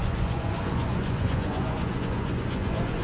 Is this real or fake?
fake